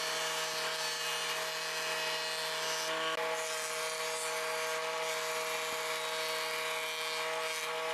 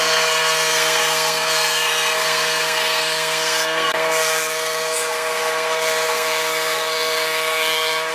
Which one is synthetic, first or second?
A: second